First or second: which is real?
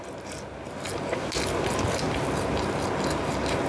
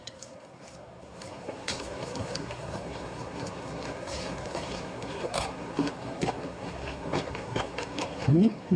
first